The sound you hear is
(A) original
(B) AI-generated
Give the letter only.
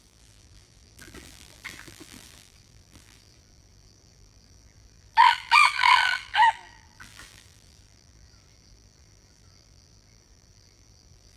B